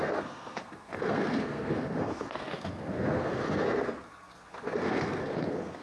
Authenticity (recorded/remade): remade